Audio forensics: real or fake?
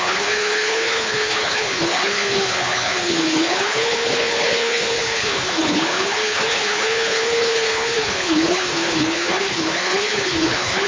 fake